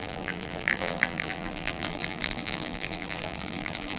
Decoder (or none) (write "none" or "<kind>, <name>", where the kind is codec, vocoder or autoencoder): vocoder, BigVGAN v2